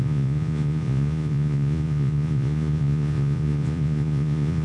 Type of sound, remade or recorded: remade